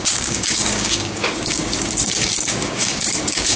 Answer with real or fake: fake